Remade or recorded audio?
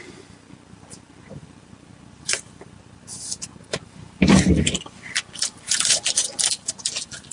remade